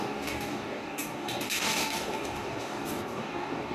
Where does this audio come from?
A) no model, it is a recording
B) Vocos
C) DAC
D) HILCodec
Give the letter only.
C